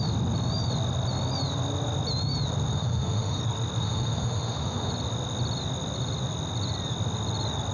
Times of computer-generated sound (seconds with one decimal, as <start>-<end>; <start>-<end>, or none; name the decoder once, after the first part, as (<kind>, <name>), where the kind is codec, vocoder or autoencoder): 2.7-3.4 (autoencoder, DAC-VAE); 3.8-4.9